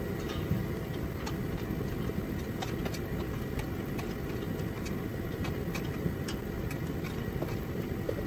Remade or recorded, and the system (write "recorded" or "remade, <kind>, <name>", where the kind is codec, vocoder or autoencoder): recorded